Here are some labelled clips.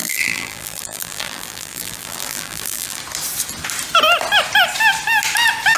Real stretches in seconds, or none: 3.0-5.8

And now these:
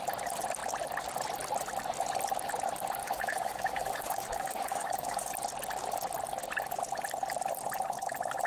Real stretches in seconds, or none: 0.0-3.0; 5.3-8.5

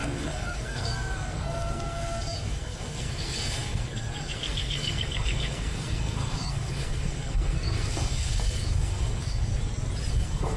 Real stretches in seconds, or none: 9.5-10.1

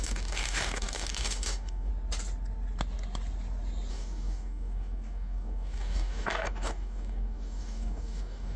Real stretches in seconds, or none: 1.9-3.9

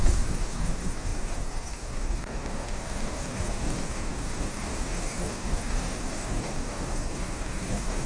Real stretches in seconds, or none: none

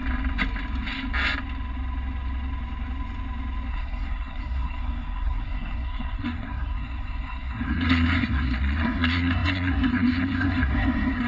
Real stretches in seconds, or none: 0.0-3.7

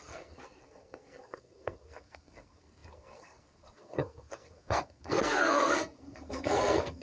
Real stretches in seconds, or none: none

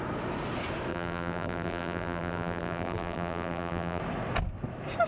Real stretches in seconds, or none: 0.0-0.9; 4.0-5.1